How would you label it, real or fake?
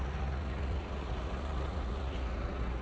fake